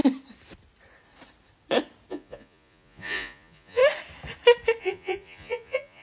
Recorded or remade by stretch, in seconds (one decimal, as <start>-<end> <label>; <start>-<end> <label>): 0.0-2.1 recorded; 2.1-3.8 remade; 3.8-4.8 recorded; 4.8-6.0 remade